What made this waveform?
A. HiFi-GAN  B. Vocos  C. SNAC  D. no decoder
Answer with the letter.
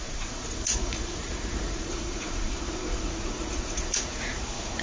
B